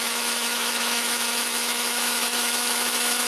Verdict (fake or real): fake